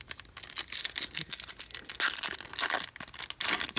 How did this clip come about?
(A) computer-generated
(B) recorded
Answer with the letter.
B